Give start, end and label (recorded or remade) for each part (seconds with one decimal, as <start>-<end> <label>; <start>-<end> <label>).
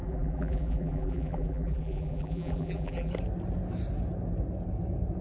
0.0-3.1 remade; 3.1-5.2 recorded